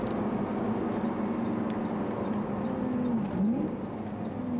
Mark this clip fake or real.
real